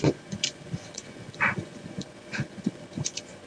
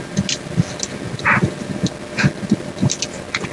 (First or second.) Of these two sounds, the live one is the second